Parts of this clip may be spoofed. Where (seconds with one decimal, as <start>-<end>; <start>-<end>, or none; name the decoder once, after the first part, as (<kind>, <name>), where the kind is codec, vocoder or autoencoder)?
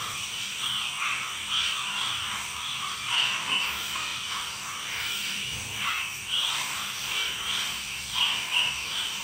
0.0-9.2 (codec, DAC)